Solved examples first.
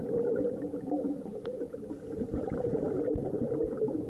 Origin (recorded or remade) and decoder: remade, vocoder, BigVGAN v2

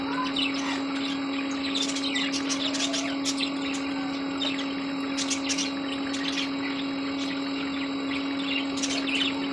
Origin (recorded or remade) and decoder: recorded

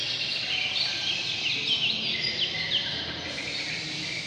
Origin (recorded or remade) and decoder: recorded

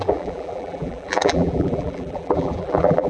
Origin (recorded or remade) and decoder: remade, vocoder, BigVGAN v2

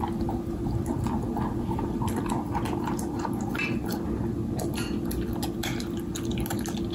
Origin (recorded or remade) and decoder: recorded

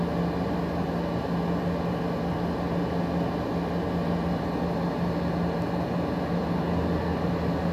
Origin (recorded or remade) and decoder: recorded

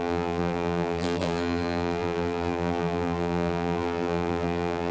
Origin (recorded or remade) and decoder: remade, vocoder, BigVGAN v2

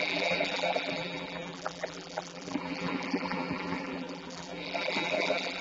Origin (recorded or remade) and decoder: remade, vocoder, BigVGAN v2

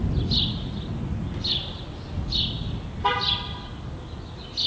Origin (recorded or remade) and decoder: recorded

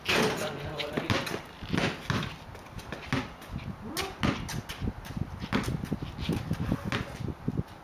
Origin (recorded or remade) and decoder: recorded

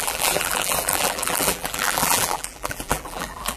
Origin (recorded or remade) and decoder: remade, vocoder, BigVGAN v2